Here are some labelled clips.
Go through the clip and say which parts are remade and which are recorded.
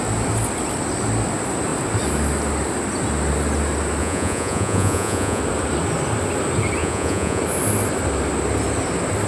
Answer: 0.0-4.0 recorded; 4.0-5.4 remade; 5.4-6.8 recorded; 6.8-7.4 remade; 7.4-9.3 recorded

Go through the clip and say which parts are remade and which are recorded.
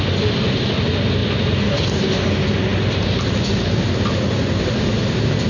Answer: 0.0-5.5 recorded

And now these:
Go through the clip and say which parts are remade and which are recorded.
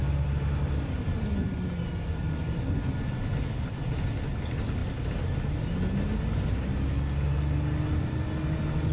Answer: 0.0-8.9 recorded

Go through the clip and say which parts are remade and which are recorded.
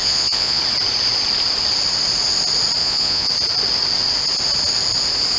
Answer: 0.0-0.6 remade; 0.6-2.8 recorded; 2.8-3.3 remade; 3.3-5.4 recorded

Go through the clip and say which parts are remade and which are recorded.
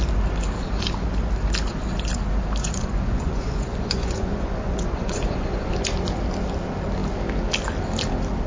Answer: 0.0-2.6 recorded; 2.6-5.7 remade; 5.7-8.5 recorded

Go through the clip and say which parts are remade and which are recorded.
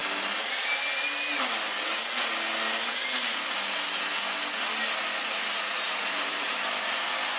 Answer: 0.0-5.2 recorded; 5.2-6.5 remade; 6.5-7.4 recorded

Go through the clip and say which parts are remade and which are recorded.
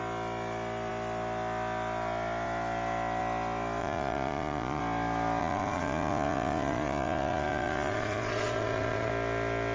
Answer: 0.0-3.8 recorded; 3.8-4.8 remade; 4.8-5.4 recorded; 5.4-9.1 remade; 9.1-9.7 recorded